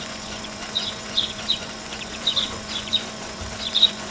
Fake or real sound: fake